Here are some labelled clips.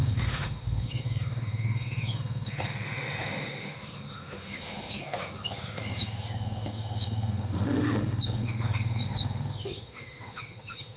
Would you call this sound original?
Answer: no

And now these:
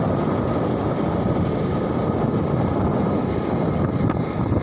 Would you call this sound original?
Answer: yes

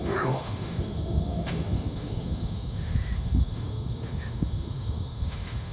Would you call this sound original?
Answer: no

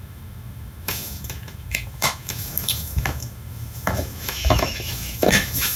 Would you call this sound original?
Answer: no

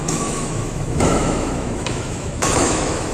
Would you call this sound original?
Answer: no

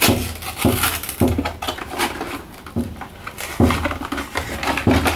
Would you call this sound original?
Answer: yes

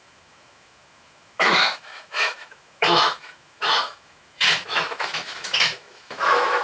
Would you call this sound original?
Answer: no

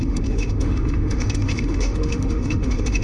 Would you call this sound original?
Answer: no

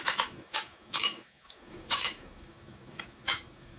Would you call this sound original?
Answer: no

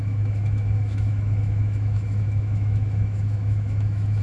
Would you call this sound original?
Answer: no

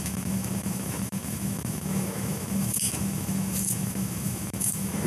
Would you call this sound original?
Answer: no